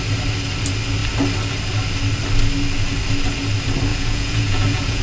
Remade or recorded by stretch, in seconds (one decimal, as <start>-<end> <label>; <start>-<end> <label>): 0.0-3.9 recorded; 3.9-5.0 remade